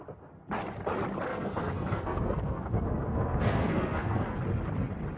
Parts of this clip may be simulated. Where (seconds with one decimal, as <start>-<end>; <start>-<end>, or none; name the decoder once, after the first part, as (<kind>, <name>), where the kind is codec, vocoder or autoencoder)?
1.3-4.4 (codec, SNAC)